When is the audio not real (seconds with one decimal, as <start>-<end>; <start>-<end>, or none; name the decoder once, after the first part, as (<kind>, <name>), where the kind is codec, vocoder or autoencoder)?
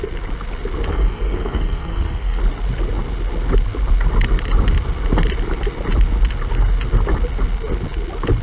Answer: 0.9-2.4 (codec, SNAC)